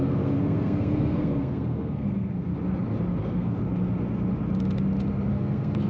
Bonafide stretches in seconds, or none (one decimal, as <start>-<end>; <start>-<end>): 2.5-3.2; 3.6-5.3